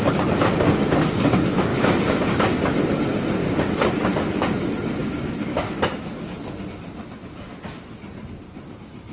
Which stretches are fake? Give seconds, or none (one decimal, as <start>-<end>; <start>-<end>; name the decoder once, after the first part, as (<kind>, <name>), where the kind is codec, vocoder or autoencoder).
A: 1.7-2.4 (codec, DAC); 3.4-3.9; 5.0-6.0